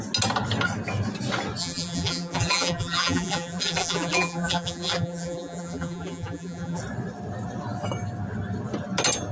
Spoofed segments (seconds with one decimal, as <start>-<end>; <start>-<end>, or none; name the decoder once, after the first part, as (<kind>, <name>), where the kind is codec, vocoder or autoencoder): 1.6-6.8 (vocoder, BigVGAN v2)